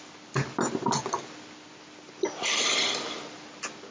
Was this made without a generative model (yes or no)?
yes